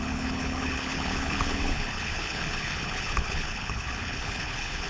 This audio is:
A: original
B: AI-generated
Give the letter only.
B